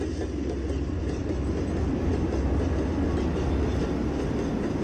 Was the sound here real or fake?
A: real